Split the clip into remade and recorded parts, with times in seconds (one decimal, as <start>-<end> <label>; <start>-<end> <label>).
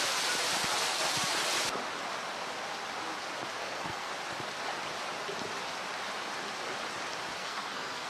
0.0-3.6 recorded; 3.6-4.1 remade; 4.1-7.4 recorded; 7.4-8.1 remade